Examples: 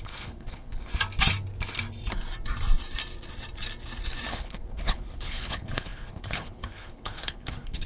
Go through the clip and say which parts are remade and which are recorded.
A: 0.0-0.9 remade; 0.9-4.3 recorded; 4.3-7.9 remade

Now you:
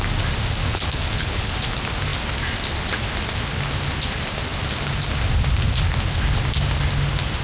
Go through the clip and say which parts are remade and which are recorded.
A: 0.0-0.6 recorded; 0.6-1.5 remade; 1.5-7.4 recorded